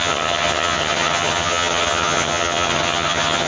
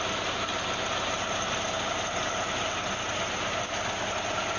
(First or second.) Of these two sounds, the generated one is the first